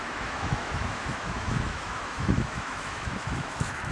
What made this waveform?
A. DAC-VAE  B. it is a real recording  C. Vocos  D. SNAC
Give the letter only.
A